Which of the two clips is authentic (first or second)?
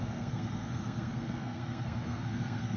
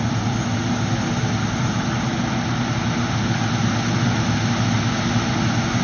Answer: second